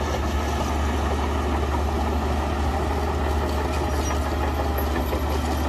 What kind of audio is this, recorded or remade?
recorded